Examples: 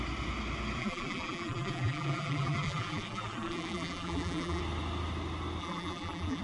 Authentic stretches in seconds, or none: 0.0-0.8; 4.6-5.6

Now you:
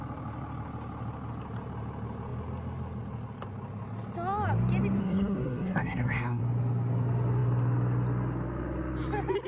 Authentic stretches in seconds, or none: 0.0-5.0; 6.4-9.5

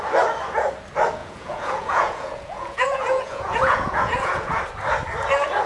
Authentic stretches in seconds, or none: 0.0-1.2; 4.6-5.7

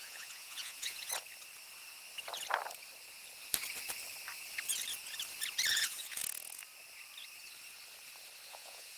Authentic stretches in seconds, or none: 1.1-5.7; 6.2-8.5

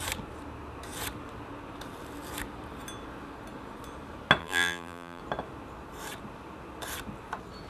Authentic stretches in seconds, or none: 0.0-4.4; 5.2-7.7

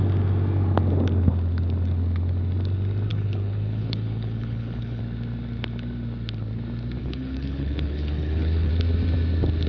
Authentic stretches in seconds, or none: 0.0-3.1; 5.0-7.0; 8.7-9.7